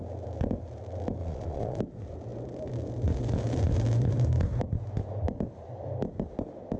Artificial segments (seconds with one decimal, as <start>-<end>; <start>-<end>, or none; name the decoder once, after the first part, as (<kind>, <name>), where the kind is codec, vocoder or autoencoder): 1.2-1.8 (vocoder, Vocos)